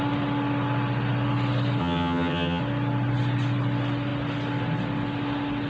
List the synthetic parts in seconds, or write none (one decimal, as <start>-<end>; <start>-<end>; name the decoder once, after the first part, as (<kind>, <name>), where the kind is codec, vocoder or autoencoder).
1.8-2.6 (vocoder, HiFi-GAN)